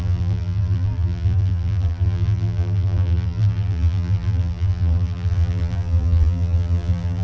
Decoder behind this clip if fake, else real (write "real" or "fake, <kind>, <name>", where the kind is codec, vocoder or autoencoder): fake, vocoder, BigVGAN v2